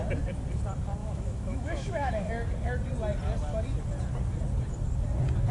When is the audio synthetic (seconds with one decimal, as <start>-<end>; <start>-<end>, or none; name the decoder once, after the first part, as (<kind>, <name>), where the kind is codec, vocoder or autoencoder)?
1.0-2.3 (autoencoder, DAC-VAE)